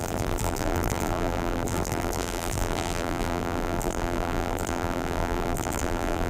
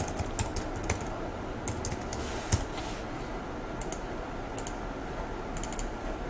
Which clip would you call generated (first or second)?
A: first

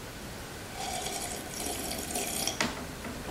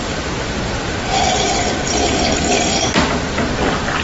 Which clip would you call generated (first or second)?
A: second